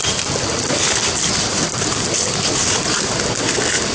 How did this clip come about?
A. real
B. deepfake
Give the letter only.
A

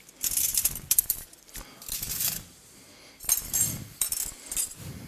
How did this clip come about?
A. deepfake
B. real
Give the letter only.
A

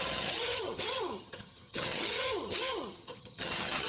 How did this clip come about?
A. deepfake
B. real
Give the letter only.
A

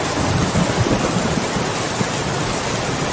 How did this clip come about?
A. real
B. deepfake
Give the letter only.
A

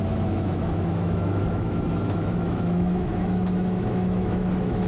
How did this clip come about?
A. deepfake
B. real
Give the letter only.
A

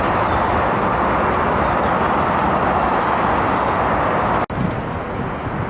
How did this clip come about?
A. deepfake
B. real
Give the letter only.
B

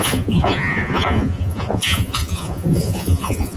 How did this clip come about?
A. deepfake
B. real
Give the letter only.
A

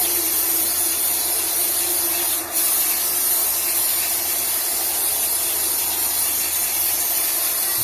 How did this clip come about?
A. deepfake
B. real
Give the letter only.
B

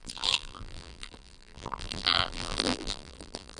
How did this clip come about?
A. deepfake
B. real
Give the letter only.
A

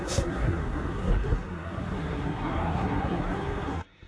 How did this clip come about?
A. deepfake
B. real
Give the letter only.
A